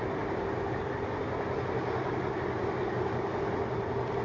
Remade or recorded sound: recorded